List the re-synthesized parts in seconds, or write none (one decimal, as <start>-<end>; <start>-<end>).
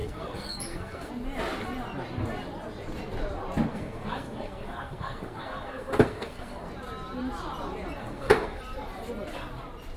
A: 0.0-1.1; 3.7-6.7; 8.0-8.6